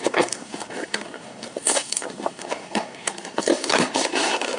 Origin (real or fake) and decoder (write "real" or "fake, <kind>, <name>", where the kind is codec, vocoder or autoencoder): fake, codec, SNAC